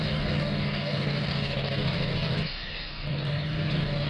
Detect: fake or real fake